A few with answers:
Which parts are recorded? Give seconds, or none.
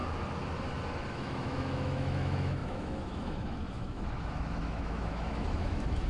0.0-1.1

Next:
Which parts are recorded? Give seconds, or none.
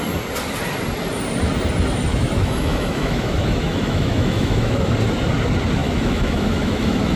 0.0-2.1; 4.9-5.8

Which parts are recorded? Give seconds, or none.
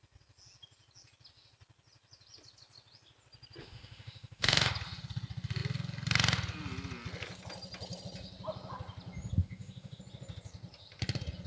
0.0-3.6; 4.7-9.4; 10.0-11.5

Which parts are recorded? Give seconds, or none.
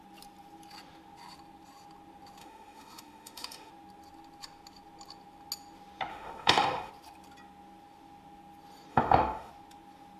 0.0-2.4; 3.7-6.1; 6.9-8.9; 9.5-10.2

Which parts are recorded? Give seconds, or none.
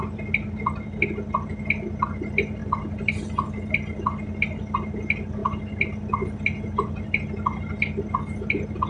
0.0-8.9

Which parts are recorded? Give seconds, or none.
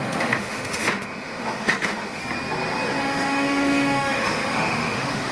2.2-3.0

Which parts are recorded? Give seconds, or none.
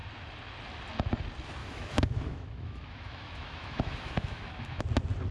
0.0-1.6; 4.8-5.3